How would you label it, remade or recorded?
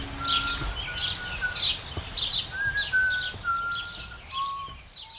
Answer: recorded